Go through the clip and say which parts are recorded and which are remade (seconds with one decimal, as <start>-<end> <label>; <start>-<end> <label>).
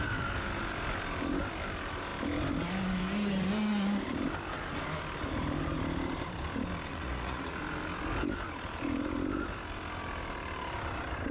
0.0-6.9 recorded; 6.9-7.6 remade; 7.6-11.3 recorded